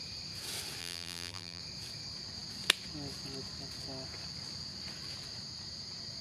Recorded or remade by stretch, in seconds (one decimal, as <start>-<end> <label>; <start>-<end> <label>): 0.0-0.8 recorded; 0.8-1.6 remade; 1.6-6.2 recorded